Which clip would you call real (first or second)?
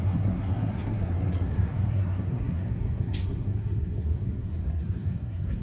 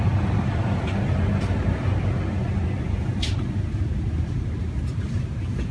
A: second